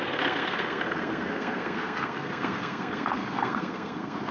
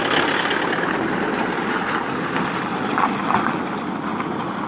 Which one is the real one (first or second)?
second